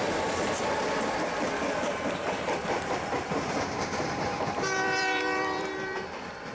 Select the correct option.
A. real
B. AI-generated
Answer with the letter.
B